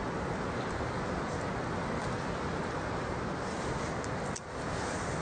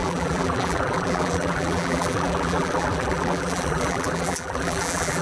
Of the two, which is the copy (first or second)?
second